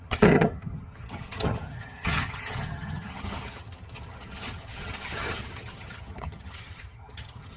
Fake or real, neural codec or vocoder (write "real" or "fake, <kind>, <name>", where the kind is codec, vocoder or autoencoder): fake, vocoder, HiFi-GAN